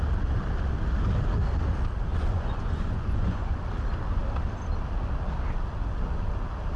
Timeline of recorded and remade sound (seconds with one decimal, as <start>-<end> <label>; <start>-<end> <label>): 0.0-2.1 recorded; 2.1-3.6 remade; 3.6-6.8 recorded